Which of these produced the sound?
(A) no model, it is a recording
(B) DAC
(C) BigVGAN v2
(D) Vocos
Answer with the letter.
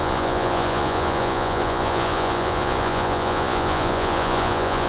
D